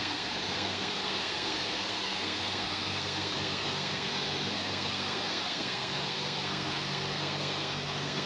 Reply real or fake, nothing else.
fake